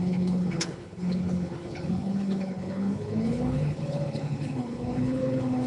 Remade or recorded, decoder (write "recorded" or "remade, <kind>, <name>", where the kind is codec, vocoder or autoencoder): remade, codec, HILCodec